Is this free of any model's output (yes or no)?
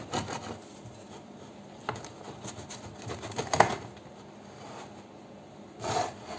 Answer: yes